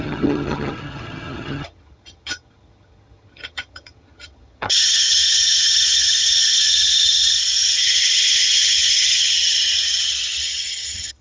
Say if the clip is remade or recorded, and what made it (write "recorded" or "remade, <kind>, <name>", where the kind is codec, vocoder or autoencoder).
remade, vocoder, HiFi-GAN